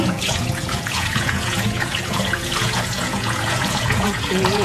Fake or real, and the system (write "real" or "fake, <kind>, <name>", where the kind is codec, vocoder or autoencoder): fake, vocoder, Vocos